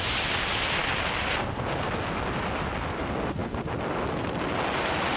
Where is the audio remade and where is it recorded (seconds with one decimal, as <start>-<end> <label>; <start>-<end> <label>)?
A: 0.0-5.2 recorded